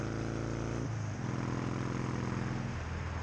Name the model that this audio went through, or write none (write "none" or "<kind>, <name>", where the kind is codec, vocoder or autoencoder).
none